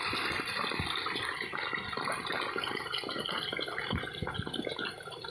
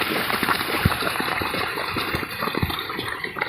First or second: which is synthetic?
second